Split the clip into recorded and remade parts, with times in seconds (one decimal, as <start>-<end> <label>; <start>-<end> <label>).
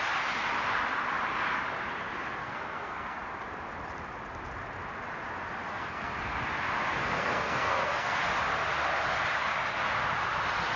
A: 0.0-2.4 recorded; 2.4-3.2 remade; 3.2-5.7 recorded; 5.7-6.4 remade; 6.4-7.0 recorded; 7.0-8.2 remade; 8.2-10.8 recorded